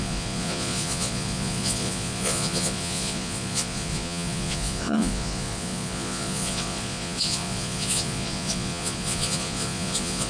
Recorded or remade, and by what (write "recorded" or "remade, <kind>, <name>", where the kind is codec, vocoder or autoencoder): remade, vocoder, Vocos